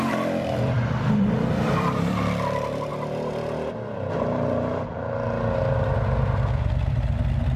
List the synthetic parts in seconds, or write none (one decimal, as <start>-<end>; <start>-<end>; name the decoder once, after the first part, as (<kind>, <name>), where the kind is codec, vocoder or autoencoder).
0.0-2.9 (vocoder, BigVGAN v2)